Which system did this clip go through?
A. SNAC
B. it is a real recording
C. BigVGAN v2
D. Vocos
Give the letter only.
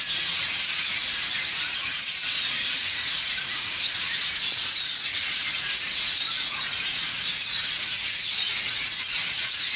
D